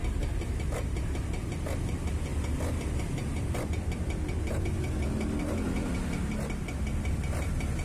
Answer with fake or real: real